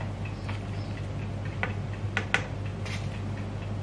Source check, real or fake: real